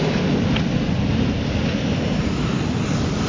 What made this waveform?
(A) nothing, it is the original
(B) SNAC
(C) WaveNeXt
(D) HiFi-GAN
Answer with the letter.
A